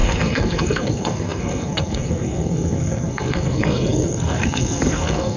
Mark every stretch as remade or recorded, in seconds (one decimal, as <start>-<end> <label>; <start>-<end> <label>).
0.0-5.4 remade